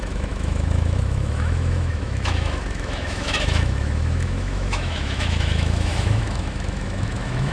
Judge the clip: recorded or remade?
remade